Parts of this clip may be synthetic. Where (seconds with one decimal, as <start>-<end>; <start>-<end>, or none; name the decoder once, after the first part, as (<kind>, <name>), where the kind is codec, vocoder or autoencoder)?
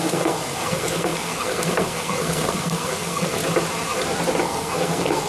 0.0-3.4 (codec, SNAC); 4.4-5.3